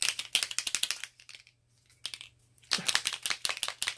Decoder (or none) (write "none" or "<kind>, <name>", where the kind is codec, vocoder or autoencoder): none